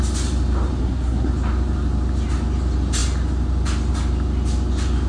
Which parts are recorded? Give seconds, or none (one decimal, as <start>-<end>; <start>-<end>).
0.0-0.8; 1.3-5.1

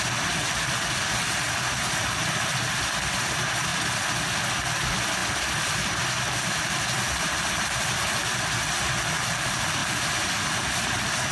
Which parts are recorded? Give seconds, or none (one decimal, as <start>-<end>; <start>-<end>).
0.0-11.3

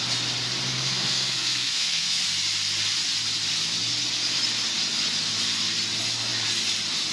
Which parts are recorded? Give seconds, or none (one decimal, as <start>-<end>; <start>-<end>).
0.0-0.7; 2.2-7.1

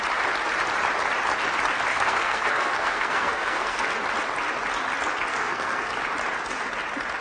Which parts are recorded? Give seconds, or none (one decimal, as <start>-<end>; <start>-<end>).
0.0-1.9; 3.9-5.3; 5.9-7.2

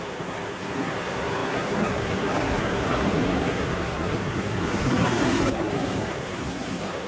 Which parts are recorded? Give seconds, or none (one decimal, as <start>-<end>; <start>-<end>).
none

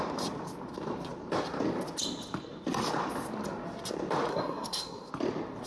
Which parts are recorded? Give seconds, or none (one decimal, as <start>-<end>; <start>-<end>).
0.0-4.3; 5.1-5.7

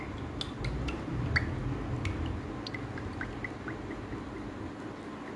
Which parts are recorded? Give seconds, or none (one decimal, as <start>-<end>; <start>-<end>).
0.0-5.4